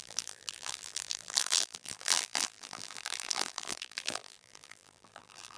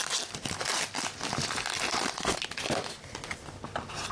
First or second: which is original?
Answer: second